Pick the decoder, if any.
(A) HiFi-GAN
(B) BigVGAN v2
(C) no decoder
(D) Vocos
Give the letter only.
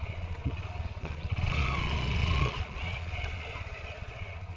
D